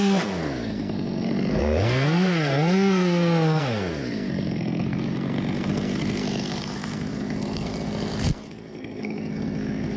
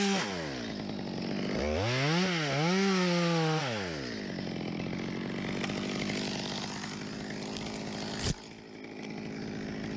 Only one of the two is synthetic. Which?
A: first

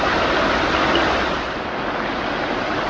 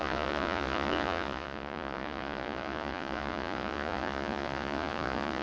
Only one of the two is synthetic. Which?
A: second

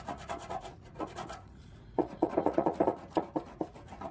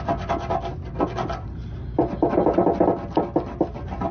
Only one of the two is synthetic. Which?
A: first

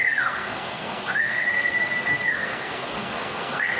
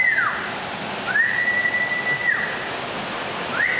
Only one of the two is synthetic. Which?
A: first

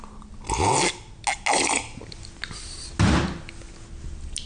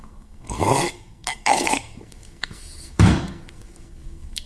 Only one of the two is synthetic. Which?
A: second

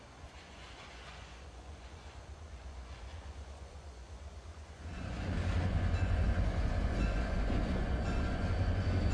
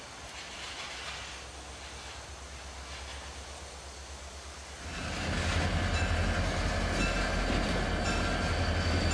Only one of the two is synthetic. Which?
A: first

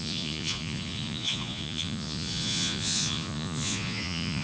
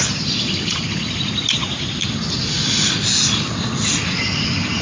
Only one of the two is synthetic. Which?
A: first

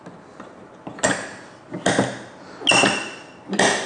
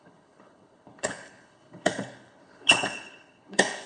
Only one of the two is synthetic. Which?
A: second